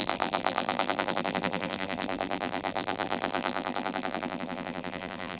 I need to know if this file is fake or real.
fake